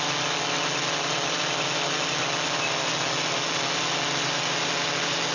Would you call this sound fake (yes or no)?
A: no